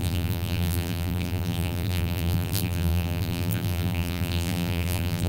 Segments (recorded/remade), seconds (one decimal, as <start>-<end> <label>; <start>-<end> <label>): 0.0-5.3 remade